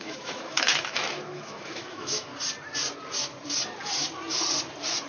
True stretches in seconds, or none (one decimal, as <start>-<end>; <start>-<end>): 2.3-5.1